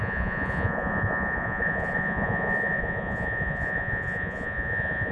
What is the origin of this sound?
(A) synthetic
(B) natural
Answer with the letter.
A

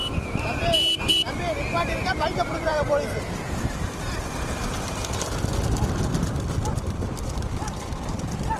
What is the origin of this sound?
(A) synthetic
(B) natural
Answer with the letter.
A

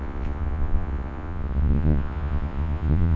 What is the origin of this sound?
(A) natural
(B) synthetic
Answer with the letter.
B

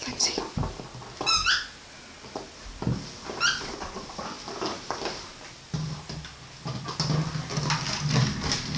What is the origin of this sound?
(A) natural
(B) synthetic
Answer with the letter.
A